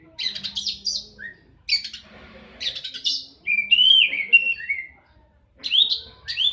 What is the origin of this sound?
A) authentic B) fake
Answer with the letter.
A